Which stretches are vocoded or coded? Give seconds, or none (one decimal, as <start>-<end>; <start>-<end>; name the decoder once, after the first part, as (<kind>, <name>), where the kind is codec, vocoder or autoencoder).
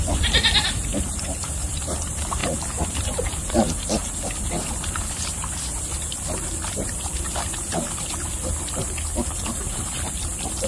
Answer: 0.0-2.4 (vocoder, BigVGAN v2); 2.9-4.0; 8.8-10.7